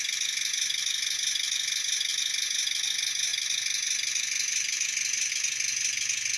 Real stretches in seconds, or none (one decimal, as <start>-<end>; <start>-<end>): 0.0-6.4